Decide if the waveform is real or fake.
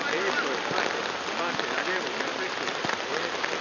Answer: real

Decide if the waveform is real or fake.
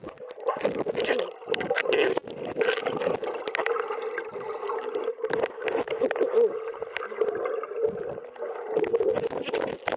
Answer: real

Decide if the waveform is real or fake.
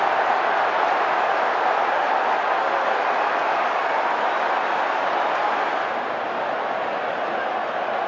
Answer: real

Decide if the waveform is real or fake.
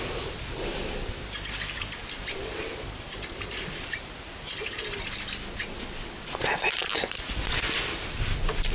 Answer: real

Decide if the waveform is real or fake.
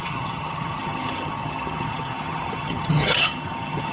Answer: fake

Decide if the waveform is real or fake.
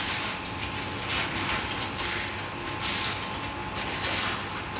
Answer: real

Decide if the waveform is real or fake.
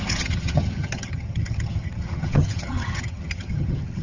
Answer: fake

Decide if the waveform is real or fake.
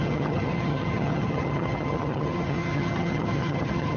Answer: fake